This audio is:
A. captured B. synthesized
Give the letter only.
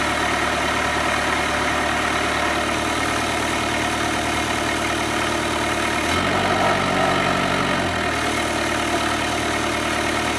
A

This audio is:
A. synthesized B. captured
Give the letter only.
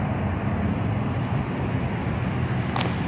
B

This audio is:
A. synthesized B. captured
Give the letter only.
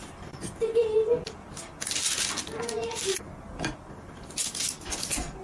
B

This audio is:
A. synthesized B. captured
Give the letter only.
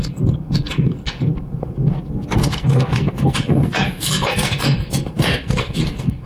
A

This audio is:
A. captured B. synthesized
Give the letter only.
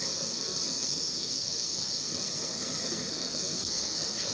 B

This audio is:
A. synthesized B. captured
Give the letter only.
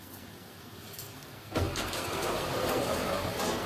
A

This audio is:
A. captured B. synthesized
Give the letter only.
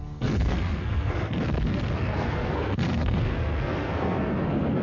B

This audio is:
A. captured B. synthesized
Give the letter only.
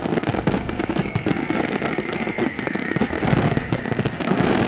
B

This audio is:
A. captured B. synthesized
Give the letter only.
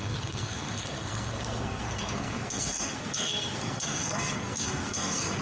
B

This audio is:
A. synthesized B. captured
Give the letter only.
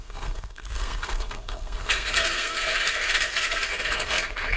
A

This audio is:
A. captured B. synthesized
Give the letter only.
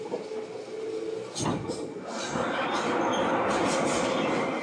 A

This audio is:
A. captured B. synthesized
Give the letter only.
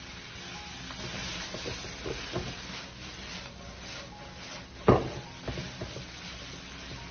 A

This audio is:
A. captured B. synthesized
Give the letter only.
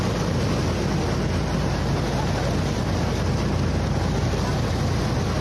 A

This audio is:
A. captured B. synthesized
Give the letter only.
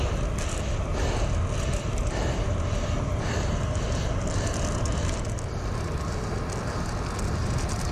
A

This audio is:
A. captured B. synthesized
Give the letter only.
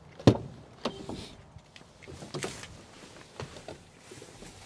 A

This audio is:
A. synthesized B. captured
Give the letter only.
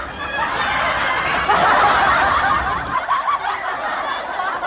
B